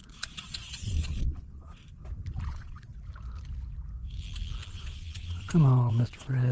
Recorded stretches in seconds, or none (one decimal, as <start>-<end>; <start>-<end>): 1.8-2.5; 2.9-4.7